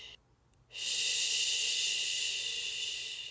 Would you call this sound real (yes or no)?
yes